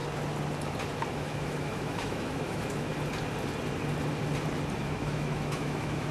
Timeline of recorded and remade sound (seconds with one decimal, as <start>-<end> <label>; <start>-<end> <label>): 0.0-1.1 recorded; 1.1-2.9 remade; 2.9-4.8 recorded; 4.8-6.1 remade